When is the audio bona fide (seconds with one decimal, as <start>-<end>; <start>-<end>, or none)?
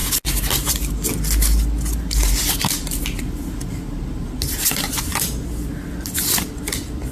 0.0-7.1